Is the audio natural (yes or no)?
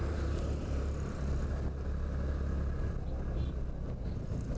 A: yes